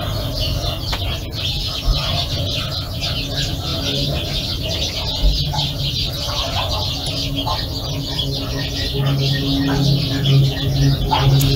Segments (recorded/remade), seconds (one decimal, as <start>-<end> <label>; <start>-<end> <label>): 0.0-11.6 recorded